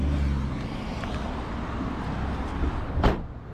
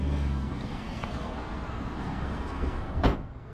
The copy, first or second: second